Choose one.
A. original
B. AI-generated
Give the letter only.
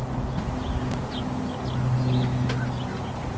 A